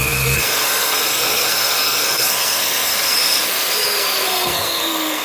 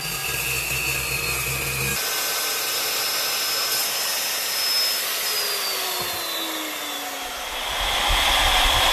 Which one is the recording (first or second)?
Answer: second